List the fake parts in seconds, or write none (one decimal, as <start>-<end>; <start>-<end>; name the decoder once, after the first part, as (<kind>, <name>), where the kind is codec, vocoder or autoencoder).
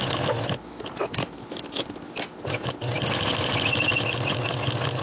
2.9-3.5 (vocoder, BigVGAN v2)